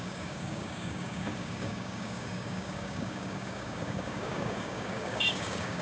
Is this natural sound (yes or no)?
no